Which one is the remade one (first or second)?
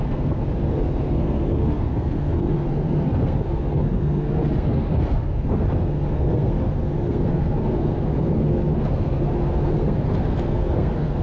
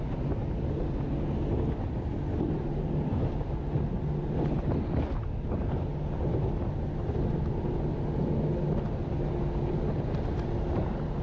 first